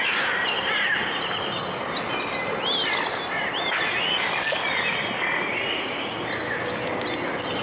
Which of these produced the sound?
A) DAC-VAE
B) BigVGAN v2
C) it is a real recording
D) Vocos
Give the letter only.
C